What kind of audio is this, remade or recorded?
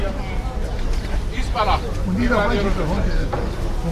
recorded